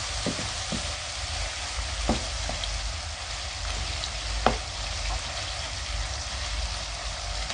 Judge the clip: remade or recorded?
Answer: recorded